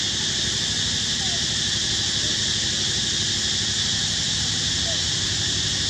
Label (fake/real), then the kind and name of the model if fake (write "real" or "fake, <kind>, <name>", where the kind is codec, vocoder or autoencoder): real